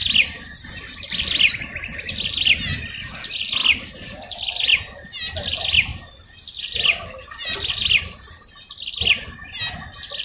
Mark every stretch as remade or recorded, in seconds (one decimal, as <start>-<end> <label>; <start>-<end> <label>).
0.0-5.9 recorded; 5.9-8.9 remade; 8.9-10.2 recorded

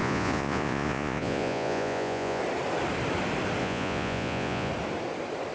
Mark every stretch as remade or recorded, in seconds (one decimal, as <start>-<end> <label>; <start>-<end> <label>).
0.0-2.4 remade; 2.4-3.6 recorded; 3.6-4.7 remade; 4.7-5.5 recorded

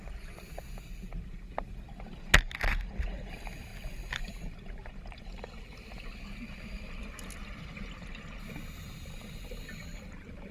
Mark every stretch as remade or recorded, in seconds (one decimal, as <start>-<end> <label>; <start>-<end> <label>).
0.0-10.5 recorded

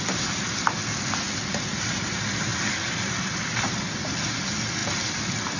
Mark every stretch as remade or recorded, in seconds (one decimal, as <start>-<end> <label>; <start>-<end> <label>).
0.0-2.5 recorded; 2.5-3.8 remade; 3.8-5.6 recorded